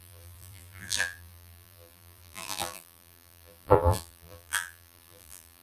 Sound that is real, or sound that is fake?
fake